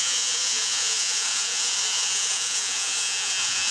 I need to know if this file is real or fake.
fake